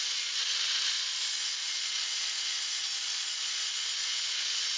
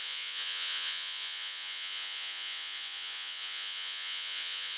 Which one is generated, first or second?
second